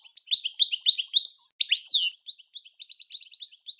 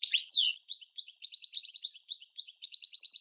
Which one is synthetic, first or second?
second